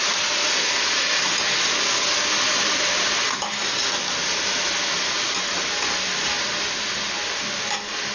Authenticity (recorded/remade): recorded